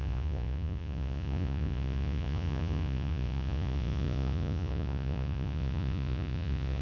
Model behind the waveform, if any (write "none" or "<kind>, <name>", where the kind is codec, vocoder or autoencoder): vocoder, Vocos